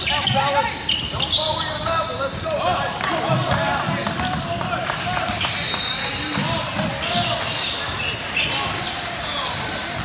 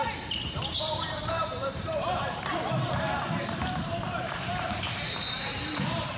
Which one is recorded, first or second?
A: first